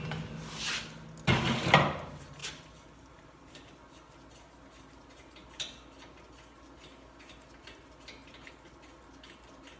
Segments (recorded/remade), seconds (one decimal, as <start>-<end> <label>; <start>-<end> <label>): 0.0-2.4 recorded; 2.4-3.5 remade; 3.5-9.8 recorded

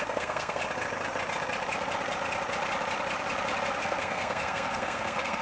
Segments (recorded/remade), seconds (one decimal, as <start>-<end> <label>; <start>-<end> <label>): 0.0-0.6 remade; 0.6-3.8 recorded; 3.8-5.4 remade

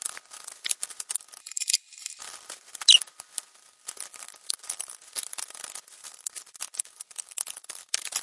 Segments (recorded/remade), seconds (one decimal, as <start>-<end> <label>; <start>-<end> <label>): 0.0-1.4 recorded; 1.4-2.2 remade; 2.2-8.2 recorded

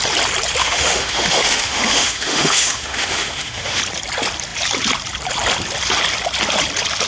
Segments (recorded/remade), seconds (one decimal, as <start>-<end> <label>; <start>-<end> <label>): 0.0-0.6 recorded; 0.6-3.8 remade; 3.8-7.1 recorded

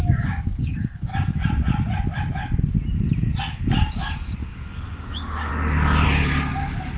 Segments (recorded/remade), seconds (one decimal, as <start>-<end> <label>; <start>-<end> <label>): 0.0-1.1 remade; 1.1-4.4 recorded; 4.4-5.5 remade; 5.5-7.0 recorded